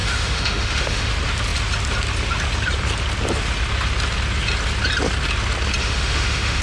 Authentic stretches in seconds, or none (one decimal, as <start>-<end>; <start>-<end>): 1.1-5.8